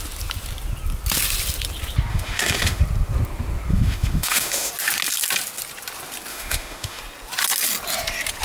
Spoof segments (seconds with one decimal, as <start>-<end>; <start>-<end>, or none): 2.1-2.8; 3.7-4.7; 6.3-7.0